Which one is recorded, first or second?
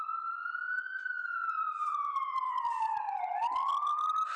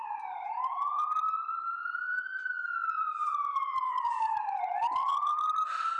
first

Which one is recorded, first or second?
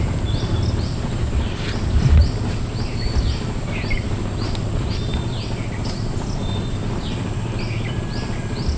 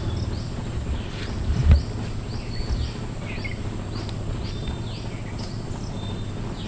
second